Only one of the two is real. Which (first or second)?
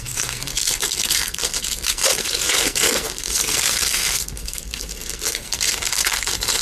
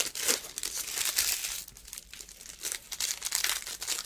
second